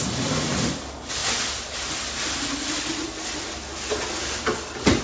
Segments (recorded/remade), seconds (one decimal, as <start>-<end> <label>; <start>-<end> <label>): 0.0-5.0 recorded